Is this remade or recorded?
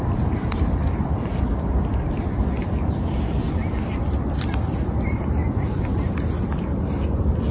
remade